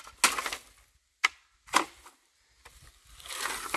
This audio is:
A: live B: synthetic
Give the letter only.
A